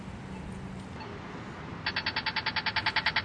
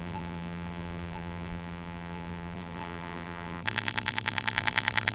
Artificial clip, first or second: second